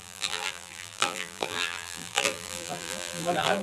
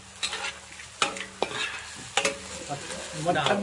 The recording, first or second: second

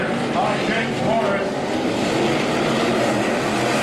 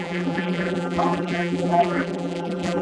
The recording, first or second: first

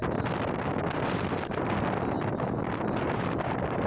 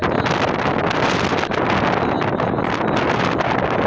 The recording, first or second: second